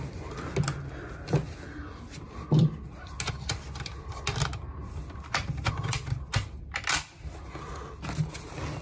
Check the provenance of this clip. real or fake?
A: real